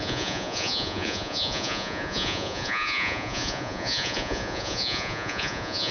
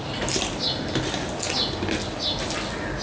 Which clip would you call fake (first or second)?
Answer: first